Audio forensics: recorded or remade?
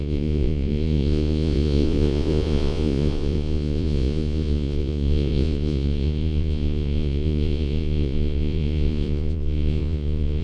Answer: remade